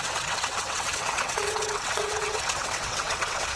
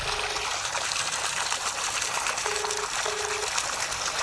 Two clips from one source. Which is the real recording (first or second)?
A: second